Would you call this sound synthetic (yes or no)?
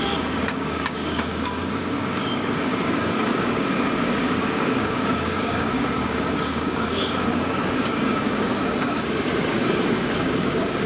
yes